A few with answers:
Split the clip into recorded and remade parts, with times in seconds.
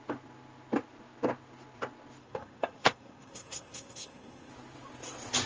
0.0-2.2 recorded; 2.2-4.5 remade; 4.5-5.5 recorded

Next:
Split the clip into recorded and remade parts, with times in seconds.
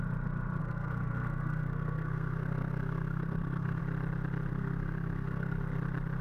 0.0-0.6 recorded; 0.6-3.8 remade; 3.8-4.5 recorded; 4.5-5.6 remade; 5.6-6.2 recorded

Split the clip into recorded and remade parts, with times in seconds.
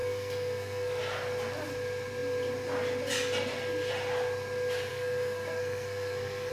0.0-1.0 remade; 1.0-4.9 recorded; 4.9-6.5 remade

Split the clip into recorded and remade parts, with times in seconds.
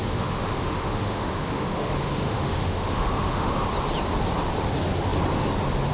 0.0-3.5 remade; 3.5-5.9 recorded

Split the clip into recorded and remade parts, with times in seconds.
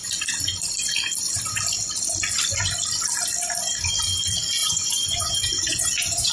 0.0-4.6 recorded; 4.6-6.3 remade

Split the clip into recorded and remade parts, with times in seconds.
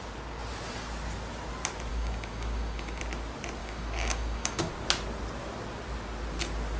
0.0-1.9 recorded; 1.9-3.0 remade; 3.0-3.6 recorded; 3.6-4.7 remade; 4.7-6.8 recorded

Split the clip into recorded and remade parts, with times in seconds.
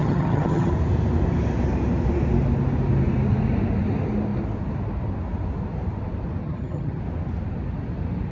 0.0-0.7 remade; 0.7-6.4 recorded; 6.4-7.0 remade; 7.0-8.3 recorded